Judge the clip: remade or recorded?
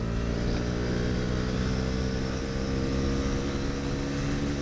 recorded